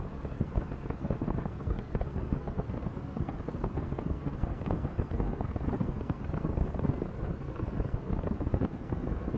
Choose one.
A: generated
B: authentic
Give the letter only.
A